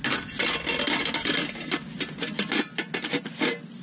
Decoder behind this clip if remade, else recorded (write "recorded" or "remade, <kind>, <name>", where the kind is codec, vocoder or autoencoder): recorded